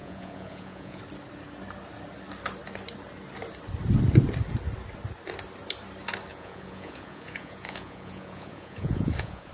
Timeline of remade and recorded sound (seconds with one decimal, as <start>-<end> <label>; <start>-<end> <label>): 0.0-1.0 remade; 1.0-6.3 recorded; 6.3-9.5 remade